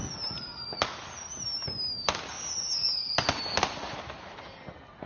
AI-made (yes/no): no